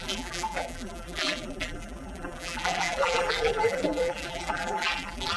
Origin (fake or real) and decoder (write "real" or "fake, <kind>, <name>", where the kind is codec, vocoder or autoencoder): fake, vocoder, BigVGAN v2